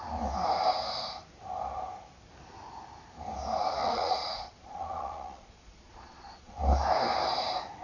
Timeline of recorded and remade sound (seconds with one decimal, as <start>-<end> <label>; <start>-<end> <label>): 0.0-3.8 recorded; 3.8-6.6 remade; 6.6-7.8 recorded